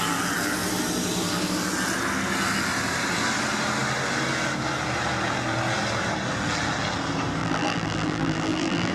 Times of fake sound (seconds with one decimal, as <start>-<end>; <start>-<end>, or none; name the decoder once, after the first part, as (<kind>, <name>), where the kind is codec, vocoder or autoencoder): 7.4-8.9 (vocoder, BigVGAN v2)